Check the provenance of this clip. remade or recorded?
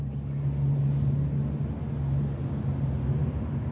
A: recorded